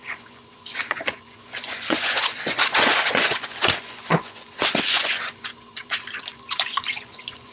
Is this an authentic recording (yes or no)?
no